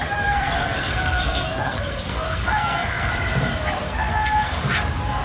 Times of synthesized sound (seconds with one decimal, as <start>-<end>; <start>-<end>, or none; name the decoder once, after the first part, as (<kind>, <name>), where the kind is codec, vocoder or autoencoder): 0.0-3.1 (codec, SNAC); 3.8-4.6